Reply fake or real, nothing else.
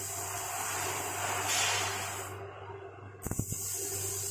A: real